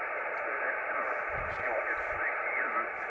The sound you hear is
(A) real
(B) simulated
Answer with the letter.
B